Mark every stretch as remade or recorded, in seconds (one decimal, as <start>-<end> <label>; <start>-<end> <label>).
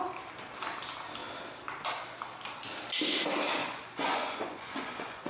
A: 0.0-3.6 recorded; 3.6-5.3 remade